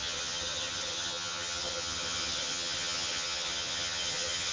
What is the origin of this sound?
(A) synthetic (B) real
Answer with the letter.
A